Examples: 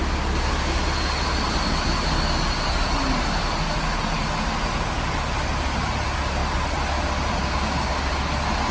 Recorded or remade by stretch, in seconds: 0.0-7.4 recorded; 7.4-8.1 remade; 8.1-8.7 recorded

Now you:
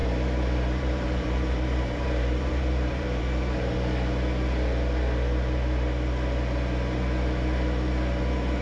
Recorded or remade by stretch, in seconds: 0.0-3.2 remade; 3.2-8.6 recorded

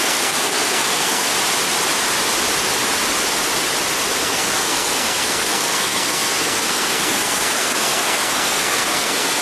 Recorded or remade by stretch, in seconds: 0.0-1.3 remade; 1.3-4.2 recorded; 4.2-9.4 remade